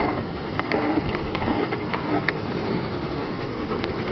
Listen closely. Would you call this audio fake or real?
fake